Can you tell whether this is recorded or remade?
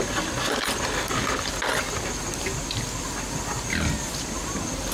recorded